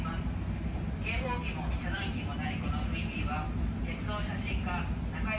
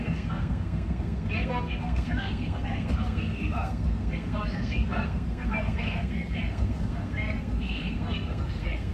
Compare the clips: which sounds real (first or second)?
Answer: first